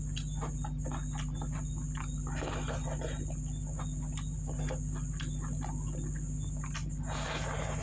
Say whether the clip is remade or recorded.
recorded